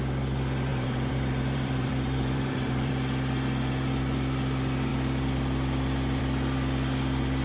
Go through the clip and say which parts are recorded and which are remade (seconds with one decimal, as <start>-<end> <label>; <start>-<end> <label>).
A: 0.0-0.7 recorded; 0.7-2.9 remade; 2.9-7.4 recorded